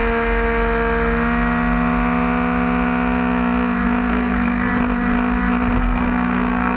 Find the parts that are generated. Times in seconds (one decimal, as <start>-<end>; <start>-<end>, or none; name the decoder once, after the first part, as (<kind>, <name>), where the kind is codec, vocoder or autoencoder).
4.1-4.7 (codec, SNAC); 5.8-6.8